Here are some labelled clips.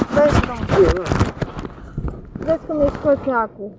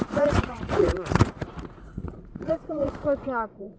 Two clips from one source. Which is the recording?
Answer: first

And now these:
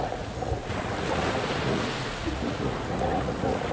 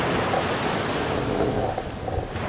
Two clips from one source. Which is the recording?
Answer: second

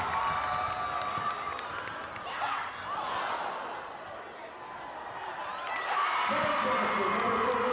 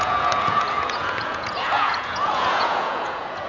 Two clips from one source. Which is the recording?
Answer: first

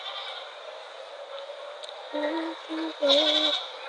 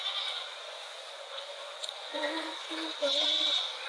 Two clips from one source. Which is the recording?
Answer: first